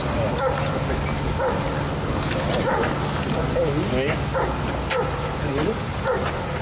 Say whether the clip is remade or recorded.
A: recorded